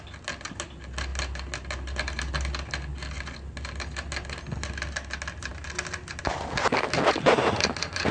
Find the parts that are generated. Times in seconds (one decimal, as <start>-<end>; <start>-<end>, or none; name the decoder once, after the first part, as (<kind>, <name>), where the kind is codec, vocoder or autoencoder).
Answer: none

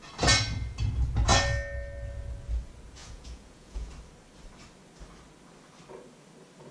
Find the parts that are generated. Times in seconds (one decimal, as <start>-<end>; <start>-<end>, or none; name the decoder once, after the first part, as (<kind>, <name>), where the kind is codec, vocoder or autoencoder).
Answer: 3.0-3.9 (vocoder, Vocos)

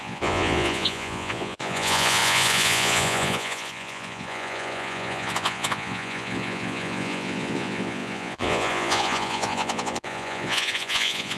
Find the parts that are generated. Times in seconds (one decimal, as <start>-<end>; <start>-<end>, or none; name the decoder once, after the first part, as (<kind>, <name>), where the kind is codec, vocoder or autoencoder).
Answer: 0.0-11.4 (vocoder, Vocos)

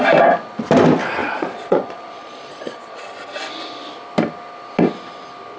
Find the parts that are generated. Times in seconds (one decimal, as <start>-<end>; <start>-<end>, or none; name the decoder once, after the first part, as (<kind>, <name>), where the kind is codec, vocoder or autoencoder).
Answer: 1.2-3.4 (vocoder, Vocos)

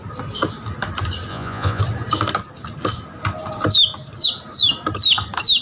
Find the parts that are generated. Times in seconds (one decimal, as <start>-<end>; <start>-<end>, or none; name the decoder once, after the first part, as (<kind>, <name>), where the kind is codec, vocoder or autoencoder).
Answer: 1.3-1.8 (vocoder, Vocos)